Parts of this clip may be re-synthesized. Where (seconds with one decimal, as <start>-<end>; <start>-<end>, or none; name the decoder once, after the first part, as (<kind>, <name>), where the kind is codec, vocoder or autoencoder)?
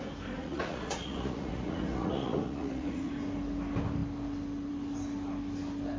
0.4-3.1 (vocoder, Vocos)